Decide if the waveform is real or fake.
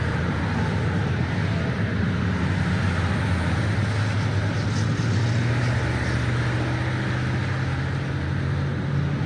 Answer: real